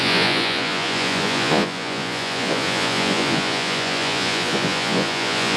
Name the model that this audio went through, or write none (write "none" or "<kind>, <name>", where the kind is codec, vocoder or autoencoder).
vocoder, Vocos